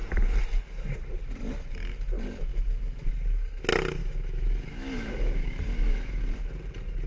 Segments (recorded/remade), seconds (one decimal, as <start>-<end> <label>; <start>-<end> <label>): 0.0-2.5 recorded; 2.5-3.1 remade; 3.1-4.0 recorded; 4.0-6.2 remade; 6.2-7.1 recorded